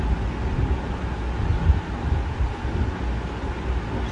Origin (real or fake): real